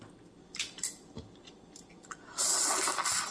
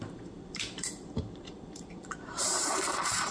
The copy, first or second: second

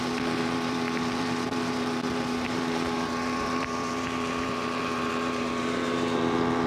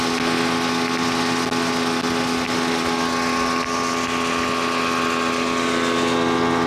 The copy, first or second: first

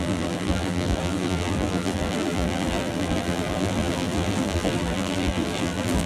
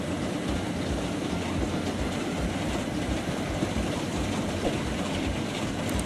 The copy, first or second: first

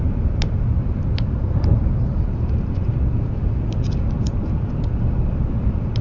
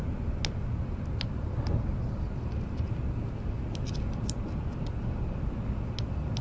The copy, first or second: first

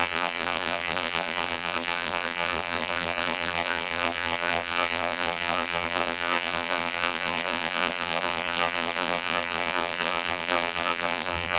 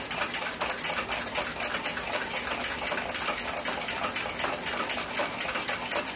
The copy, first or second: first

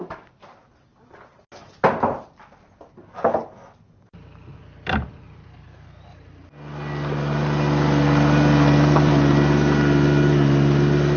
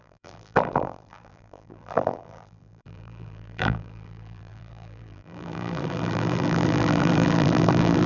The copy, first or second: second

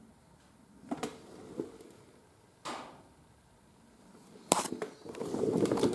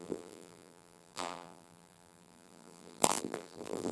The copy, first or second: second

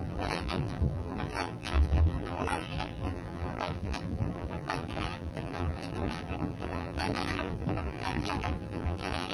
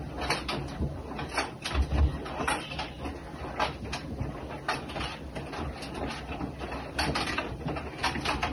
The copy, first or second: first